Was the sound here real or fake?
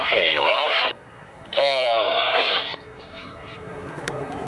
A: fake